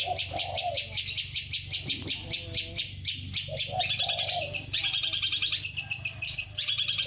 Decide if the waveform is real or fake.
real